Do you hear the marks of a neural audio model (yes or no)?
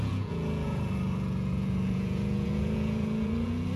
yes